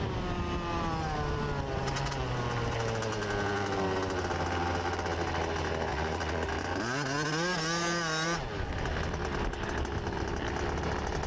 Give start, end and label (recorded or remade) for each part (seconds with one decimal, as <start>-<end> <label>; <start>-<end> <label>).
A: 0.0-5.9 recorded; 5.9-6.5 remade; 6.5-11.3 recorded